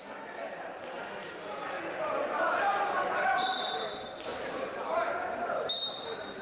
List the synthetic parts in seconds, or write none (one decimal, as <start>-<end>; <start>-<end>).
4.3-4.8